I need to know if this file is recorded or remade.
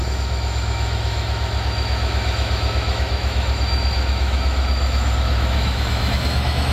remade